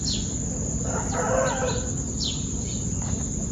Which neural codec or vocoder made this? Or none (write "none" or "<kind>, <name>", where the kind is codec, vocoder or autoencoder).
none